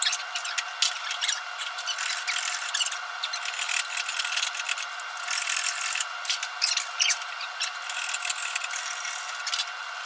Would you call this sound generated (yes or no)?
no